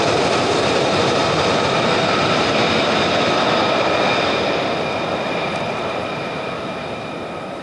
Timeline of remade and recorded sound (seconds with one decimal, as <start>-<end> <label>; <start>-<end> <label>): 0.0-1.2 remade; 1.2-5.4 recorded; 5.4-7.6 remade